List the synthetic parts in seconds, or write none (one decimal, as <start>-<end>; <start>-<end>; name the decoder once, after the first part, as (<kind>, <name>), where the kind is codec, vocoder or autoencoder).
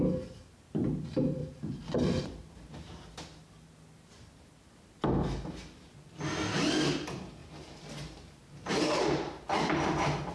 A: 1.4-3.1 (vocoder, BigVGAN v2); 7.4-9.0